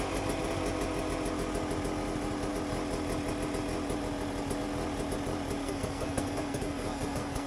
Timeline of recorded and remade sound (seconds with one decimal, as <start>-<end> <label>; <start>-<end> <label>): 0.0-5.6 recorded; 5.6-7.5 remade